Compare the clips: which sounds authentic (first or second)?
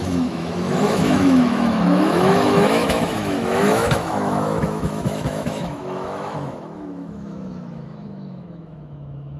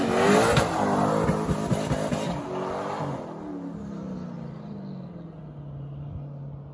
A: second